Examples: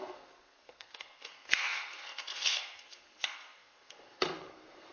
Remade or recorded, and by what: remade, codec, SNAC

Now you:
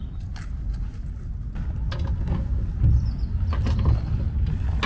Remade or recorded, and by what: recorded